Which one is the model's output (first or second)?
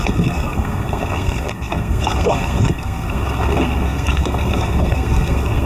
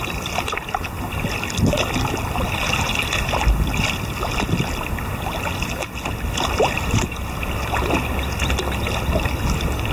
first